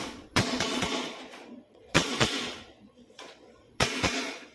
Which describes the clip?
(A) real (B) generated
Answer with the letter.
B